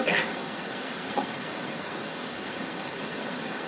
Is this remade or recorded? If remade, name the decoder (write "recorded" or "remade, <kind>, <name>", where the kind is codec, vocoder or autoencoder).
remade, codec, SNAC